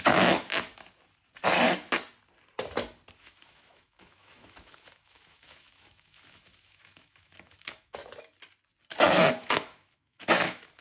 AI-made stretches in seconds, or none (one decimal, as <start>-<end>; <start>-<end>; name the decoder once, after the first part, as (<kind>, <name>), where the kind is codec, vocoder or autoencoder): 0.0-0.7 (autoencoder, DAC-VAE); 3.2-8.0; 9.4-10.8